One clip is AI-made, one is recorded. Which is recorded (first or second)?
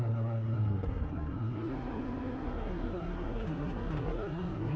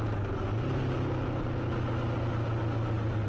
second